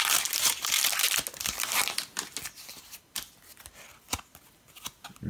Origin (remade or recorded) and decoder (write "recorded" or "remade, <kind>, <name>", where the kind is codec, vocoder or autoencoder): recorded